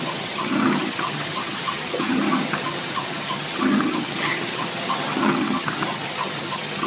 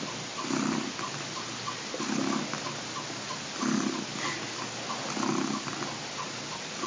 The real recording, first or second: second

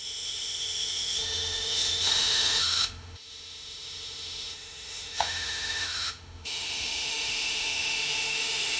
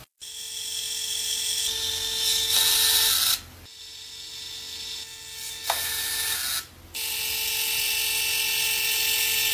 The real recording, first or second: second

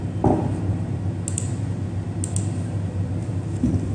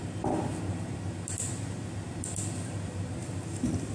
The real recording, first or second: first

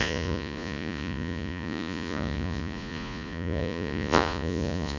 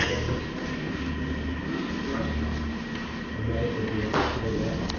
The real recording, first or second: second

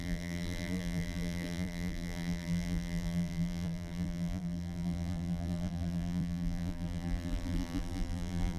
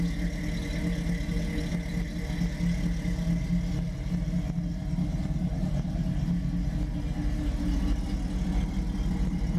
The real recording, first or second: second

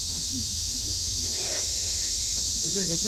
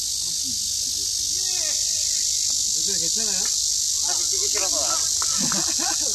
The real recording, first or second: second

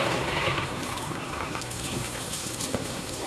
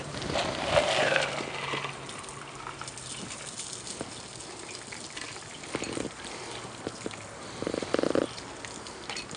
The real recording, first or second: second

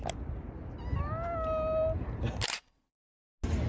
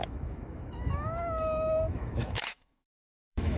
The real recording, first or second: first